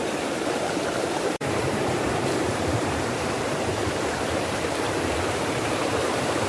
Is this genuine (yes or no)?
no